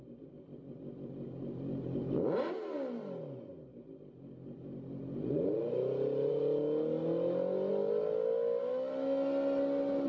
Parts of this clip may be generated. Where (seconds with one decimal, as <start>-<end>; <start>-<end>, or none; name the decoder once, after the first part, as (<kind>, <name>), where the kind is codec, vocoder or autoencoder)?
none